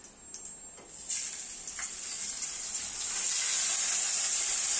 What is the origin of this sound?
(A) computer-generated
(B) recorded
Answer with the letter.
B